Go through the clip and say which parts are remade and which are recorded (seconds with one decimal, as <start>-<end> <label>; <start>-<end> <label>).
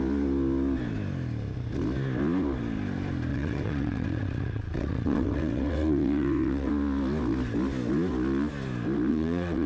0.0-3.3 recorded; 3.3-6.7 remade; 6.7-9.1 recorded; 9.1-9.7 remade